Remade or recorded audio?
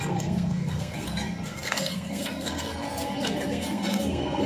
remade